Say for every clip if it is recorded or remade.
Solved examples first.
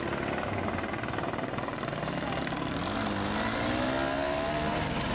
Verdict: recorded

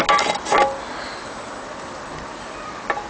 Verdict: recorded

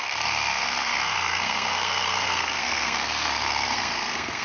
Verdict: remade